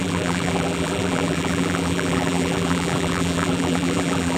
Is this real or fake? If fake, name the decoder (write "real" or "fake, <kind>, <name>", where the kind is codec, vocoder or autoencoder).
fake, vocoder, BigVGAN v2